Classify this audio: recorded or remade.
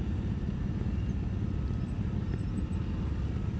recorded